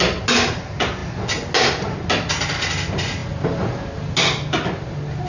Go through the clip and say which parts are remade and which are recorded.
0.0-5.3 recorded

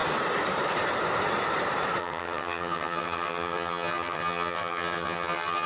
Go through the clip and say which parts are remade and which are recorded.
0.0-2.0 recorded; 2.0-5.7 remade

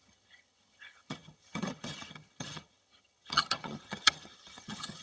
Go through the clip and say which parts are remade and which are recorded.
0.0-5.0 remade

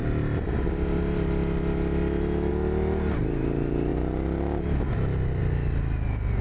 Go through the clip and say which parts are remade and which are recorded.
0.0-6.4 recorded

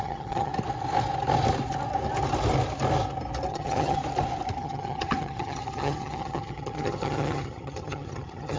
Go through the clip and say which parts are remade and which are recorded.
0.0-0.5 remade; 0.5-3.5 recorded; 3.5-4.0 remade; 4.0-4.6 recorded; 4.6-8.6 remade

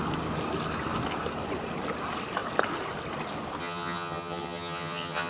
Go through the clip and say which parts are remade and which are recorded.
0.0-3.6 recorded; 3.6-5.3 remade